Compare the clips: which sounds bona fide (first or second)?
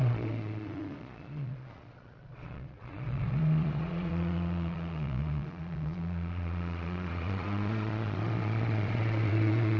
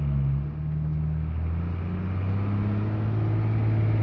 second